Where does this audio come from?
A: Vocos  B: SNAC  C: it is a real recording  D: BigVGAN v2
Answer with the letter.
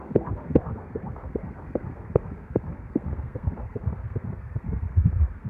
B